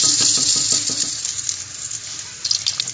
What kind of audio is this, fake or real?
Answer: real